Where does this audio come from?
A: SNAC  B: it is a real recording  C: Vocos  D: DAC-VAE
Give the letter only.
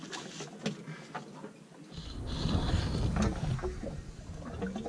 B